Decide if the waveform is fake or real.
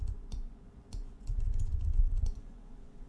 fake